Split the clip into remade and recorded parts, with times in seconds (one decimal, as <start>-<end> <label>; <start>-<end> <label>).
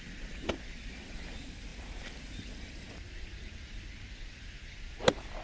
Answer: 0.0-5.4 recorded